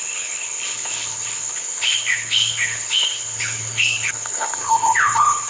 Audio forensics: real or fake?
fake